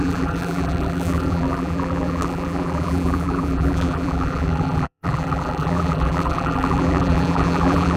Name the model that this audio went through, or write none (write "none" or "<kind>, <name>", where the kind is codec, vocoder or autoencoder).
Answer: vocoder, BigVGAN v2